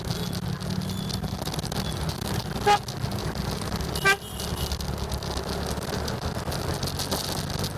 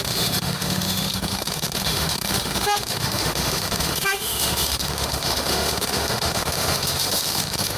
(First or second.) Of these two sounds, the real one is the first